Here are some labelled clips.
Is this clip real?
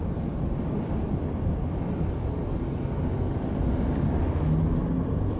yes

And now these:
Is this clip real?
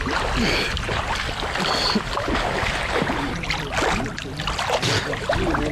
yes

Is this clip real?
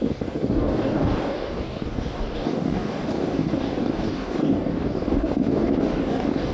no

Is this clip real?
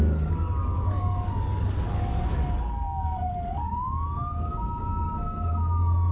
no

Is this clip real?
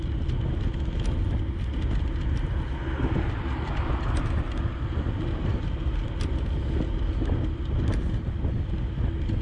yes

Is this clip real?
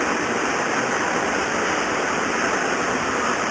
yes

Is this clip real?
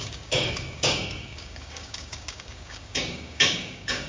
no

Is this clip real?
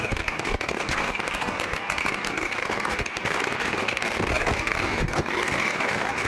no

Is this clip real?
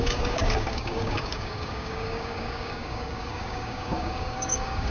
no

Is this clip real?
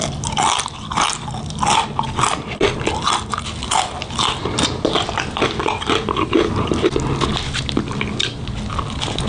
yes